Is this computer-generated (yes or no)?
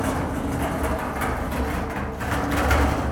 no